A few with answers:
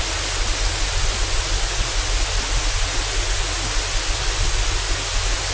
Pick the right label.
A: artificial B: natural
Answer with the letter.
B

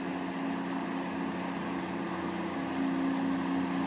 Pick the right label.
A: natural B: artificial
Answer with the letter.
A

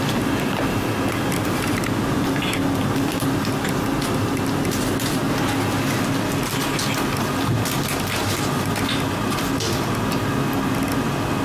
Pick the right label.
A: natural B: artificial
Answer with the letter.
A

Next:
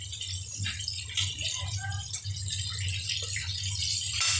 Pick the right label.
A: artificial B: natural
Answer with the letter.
B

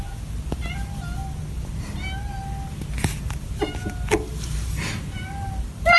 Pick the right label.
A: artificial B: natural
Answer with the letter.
B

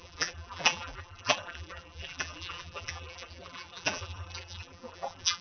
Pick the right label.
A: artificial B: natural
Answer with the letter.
A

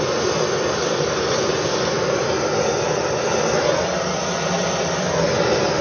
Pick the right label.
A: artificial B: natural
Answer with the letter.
B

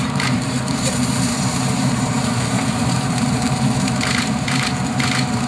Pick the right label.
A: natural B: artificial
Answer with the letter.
B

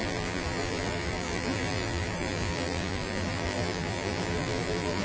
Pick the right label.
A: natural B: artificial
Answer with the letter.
B